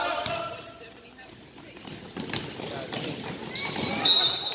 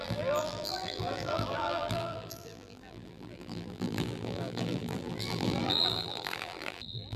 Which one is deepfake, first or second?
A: second